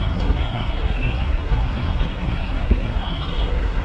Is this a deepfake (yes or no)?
yes